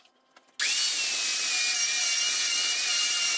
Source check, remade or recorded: recorded